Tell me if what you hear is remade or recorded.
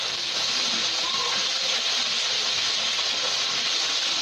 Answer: recorded